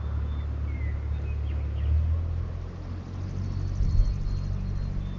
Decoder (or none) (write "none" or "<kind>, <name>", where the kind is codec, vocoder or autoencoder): none